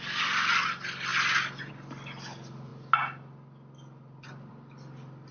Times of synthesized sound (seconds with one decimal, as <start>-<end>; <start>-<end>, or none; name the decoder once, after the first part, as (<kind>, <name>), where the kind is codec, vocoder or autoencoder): none